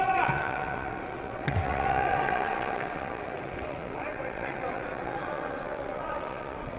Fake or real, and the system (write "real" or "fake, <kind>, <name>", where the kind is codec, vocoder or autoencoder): fake, vocoder, WaveNeXt